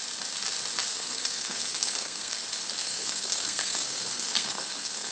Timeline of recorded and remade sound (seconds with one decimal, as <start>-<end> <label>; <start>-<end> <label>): 0.0-0.9 recorded; 0.9-2.4 remade; 2.4-2.8 recorded; 2.8-5.1 remade